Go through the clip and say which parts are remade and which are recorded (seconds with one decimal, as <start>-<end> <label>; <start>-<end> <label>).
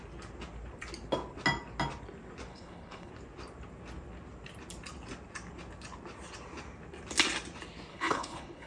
0.0-2.5 recorded; 2.5-3.1 remade; 3.1-7.9 recorded; 7.9-8.7 remade